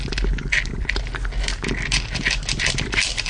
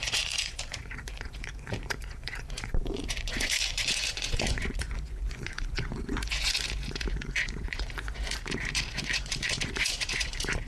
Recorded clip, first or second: first